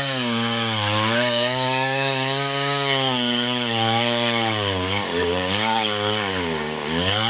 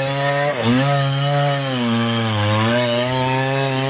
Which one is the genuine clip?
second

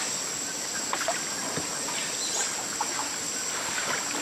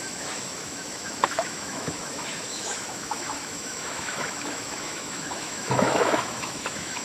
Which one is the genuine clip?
first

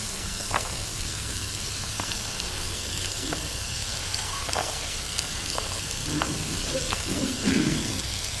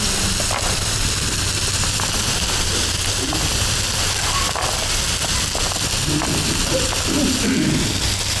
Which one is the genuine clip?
second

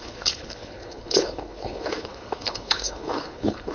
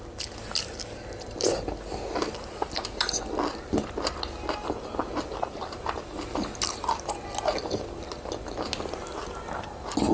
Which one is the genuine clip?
second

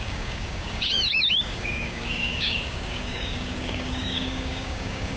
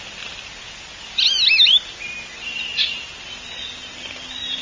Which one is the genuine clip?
second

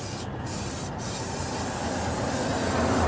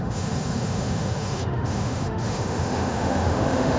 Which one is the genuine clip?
first